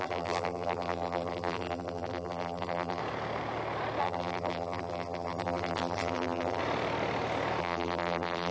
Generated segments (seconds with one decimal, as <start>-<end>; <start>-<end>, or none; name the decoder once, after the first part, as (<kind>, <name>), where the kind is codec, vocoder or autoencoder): 0.0-3.0 (vocoder, BigVGAN v2); 4.0-6.6; 7.6-8.5